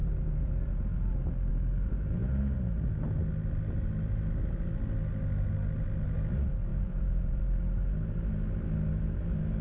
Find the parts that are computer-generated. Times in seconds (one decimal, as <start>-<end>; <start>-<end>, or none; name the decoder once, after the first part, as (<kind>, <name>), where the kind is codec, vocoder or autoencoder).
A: 0.0-0.5 (vocoder, Vocos); 6.7-7.4